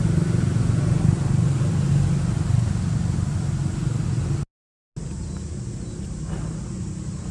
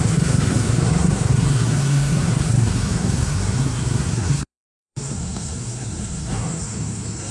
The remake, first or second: second